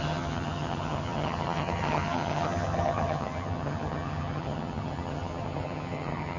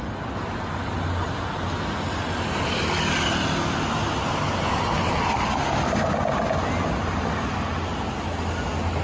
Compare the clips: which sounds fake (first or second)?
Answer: first